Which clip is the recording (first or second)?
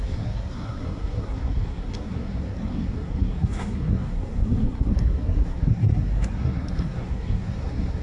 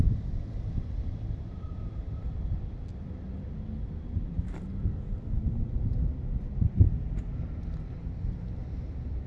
second